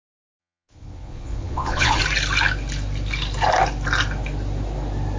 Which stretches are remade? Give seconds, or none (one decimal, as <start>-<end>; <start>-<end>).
0.4-2.0